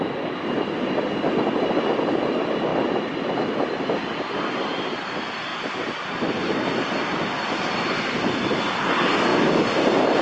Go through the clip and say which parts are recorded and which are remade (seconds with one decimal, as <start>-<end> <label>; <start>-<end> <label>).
0.0-5.5 recorded; 5.5-6.3 remade; 6.3-9.3 recorded; 9.3-10.2 remade